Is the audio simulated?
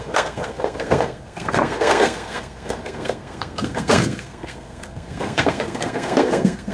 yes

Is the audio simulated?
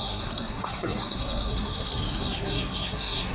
yes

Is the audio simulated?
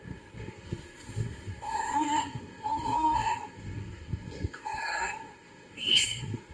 yes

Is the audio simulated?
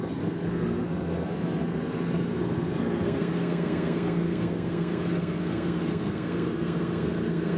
yes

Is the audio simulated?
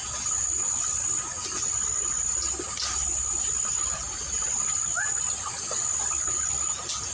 no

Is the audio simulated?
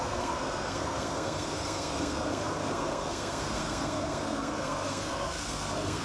yes